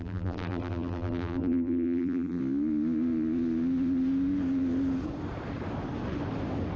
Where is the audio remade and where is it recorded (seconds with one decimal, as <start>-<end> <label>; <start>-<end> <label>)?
0.0-2.4 remade; 2.4-6.8 recorded